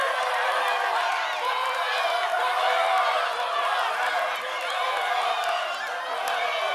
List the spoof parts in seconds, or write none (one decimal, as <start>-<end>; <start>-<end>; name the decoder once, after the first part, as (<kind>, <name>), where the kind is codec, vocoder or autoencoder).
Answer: none